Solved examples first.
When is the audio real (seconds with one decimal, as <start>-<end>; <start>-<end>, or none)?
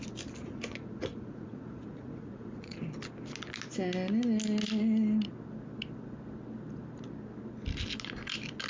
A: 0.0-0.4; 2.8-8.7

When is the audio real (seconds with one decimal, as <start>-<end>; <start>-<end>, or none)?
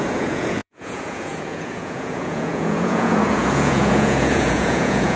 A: none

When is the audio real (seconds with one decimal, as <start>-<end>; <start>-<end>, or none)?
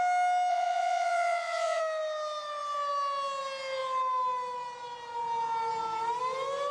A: 0.0-0.5; 1.8-6.7